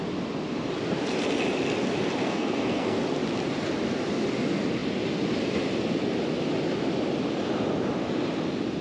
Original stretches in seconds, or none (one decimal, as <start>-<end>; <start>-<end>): 0.0-2.2; 3.0-8.8